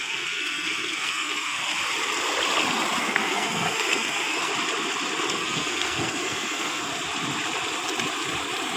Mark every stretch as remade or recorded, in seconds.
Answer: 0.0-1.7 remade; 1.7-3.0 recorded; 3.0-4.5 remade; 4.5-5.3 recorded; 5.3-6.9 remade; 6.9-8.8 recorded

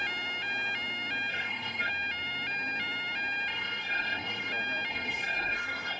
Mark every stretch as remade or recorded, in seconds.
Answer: 0.0-1.3 recorded; 1.3-1.9 remade; 1.9-3.5 recorded; 3.5-4.5 remade; 4.5-4.9 recorded; 4.9-6.0 remade